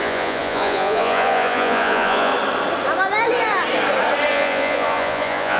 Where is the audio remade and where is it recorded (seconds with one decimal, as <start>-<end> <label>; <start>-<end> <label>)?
0.0-2.3 remade; 2.3-4.3 recorded; 4.3-5.6 remade